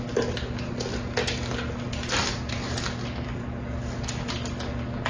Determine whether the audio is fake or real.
real